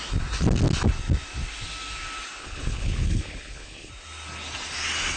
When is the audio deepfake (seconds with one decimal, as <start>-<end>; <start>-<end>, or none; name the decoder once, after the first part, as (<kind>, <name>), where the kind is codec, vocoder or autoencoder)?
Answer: 2.4-3.9 (codec, HILCodec)